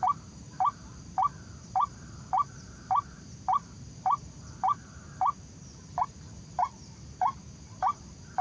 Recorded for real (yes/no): no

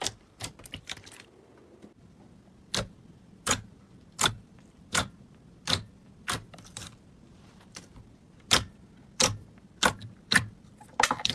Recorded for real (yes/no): no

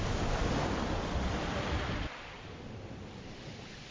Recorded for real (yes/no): yes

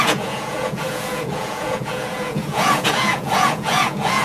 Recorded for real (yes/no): no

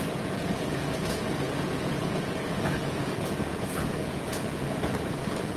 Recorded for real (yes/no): no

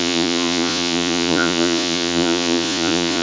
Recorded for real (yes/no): no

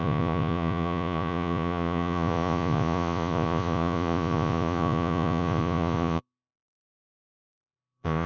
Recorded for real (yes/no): no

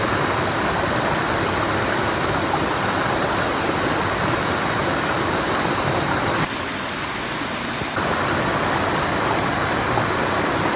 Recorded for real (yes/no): yes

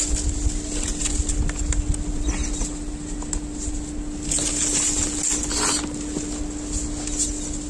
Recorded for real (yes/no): yes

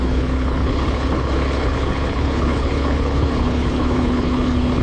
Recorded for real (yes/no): no